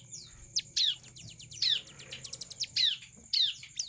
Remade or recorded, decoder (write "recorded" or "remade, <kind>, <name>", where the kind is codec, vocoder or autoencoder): recorded